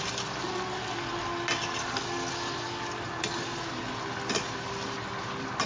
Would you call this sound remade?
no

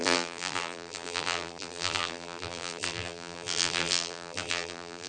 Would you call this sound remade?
yes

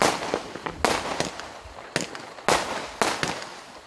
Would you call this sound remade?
no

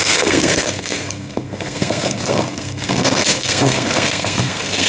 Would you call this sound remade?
yes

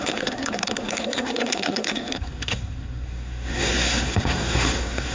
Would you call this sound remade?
yes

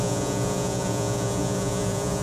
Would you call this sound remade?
yes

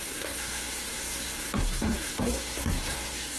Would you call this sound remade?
yes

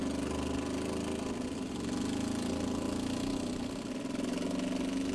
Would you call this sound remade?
no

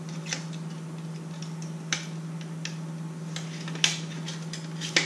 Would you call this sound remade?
no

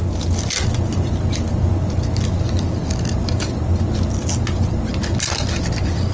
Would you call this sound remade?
no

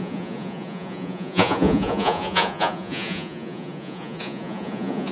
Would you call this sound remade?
yes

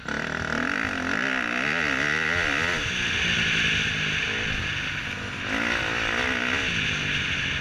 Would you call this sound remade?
no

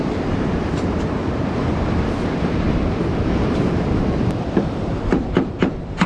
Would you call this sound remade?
yes